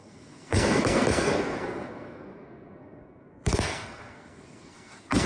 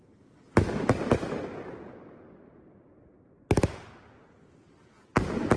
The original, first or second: second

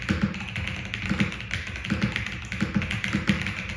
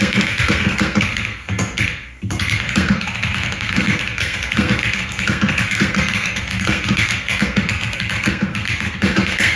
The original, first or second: first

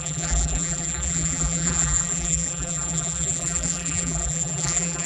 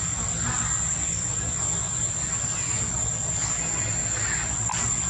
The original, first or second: second